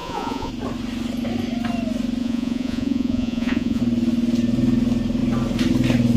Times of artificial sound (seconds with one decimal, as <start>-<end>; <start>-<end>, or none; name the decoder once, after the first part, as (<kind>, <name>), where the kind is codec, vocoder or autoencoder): 0.0-0.5 (vocoder, Vocos); 2.2-3.8